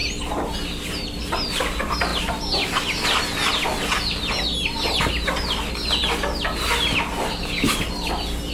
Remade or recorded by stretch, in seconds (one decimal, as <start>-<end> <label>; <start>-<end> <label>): 0.0-8.5 recorded